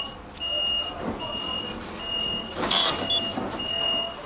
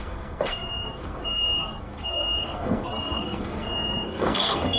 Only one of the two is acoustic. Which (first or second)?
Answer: first